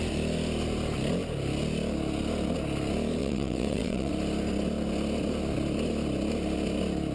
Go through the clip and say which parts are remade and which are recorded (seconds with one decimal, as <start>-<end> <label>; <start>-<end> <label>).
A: 0.0-3.2 recorded; 3.2-4.1 remade; 4.1-7.1 recorded